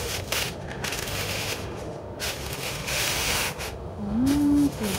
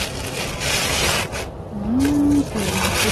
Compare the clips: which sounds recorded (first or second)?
second